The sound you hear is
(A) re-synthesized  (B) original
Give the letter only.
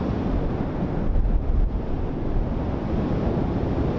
B